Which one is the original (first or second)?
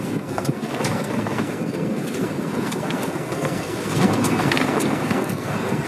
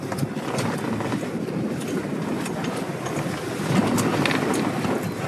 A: second